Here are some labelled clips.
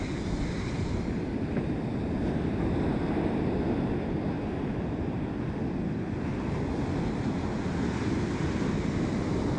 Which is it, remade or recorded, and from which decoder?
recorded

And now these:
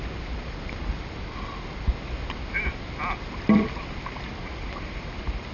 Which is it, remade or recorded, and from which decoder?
recorded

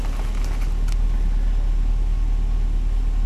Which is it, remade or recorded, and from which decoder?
recorded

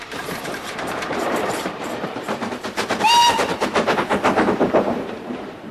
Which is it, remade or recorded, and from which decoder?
remade, vocoder, BigVGAN v2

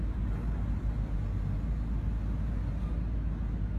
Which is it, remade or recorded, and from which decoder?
recorded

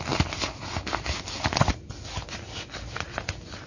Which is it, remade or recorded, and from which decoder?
recorded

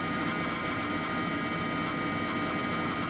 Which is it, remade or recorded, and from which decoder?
recorded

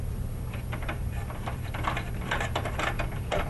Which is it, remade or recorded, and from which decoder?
remade, vocoder, BigVGAN v2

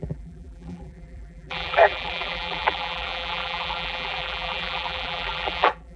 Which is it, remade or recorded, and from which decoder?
remade, vocoder, BigVGAN v2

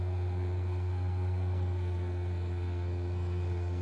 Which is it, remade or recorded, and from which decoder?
remade, codec, SNAC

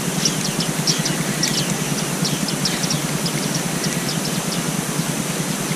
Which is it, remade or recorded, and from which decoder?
recorded